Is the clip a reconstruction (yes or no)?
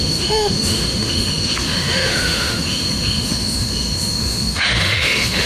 yes